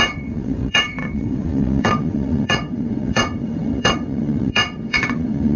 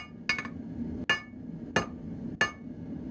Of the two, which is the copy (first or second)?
first